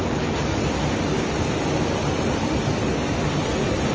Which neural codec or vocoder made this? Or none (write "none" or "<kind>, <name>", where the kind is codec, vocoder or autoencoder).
none